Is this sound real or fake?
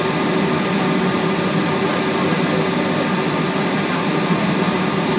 real